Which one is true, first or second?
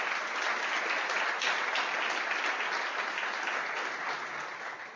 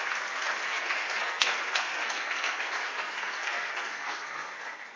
first